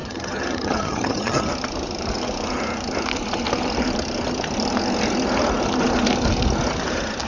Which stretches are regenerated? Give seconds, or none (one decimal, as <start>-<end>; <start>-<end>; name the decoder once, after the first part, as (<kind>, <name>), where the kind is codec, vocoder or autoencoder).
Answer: 0.0-1.5 (vocoder, HiFi-GAN)